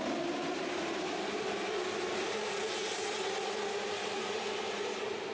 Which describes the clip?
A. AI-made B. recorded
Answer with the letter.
B